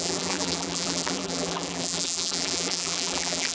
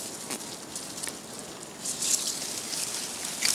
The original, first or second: second